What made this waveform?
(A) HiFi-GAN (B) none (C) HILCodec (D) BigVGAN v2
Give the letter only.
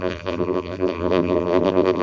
D